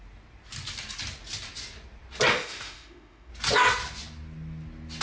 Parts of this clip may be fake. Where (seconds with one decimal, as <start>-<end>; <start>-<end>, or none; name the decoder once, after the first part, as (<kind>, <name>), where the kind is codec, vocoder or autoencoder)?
2.3-3.3 (autoencoder, DAC-VAE)